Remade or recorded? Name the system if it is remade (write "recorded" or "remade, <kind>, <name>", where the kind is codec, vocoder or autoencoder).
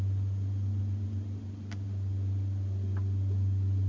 recorded